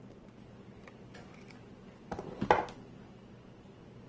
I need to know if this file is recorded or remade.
recorded